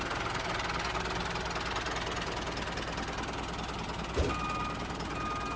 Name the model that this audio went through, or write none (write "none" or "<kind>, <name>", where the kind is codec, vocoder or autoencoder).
none